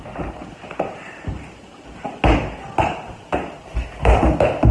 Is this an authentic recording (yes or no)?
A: yes